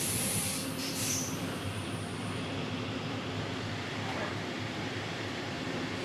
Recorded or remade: remade